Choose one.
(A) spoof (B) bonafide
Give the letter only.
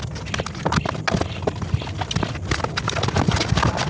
B